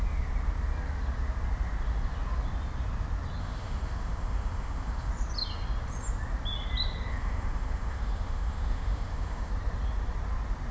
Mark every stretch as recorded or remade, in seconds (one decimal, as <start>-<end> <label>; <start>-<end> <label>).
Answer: 0.0-3.4 recorded; 3.4-5.1 remade; 5.1-7.1 recorded; 7.1-9.5 remade; 9.5-10.7 recorded